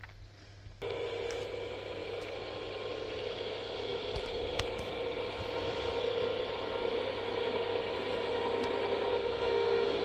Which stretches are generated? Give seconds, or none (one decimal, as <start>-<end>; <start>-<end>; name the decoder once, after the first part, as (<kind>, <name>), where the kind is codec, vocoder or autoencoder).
9.1-10.0 (codec, SNAC)